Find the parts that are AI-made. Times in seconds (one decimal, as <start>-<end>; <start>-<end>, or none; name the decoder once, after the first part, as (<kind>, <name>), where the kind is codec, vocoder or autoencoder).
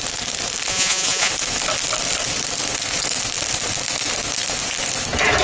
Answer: 0.7-1.3 (vocoder, Vocos)